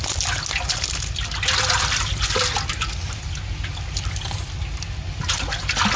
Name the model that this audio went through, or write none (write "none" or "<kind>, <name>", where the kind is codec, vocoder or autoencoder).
none